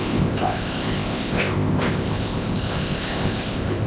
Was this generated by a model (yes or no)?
yes